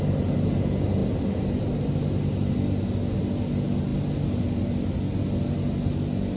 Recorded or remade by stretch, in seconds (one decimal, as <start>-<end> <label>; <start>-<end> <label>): 0.0-6.4 recorded